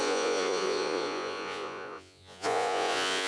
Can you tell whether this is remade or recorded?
remade